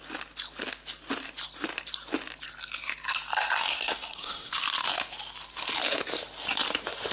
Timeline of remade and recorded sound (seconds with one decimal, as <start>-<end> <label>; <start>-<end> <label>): 0.0-3.7 recorded; 3.7-4.5 remade; 4.5-7.1 recorded